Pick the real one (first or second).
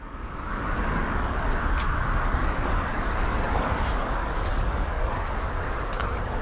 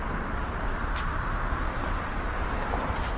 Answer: second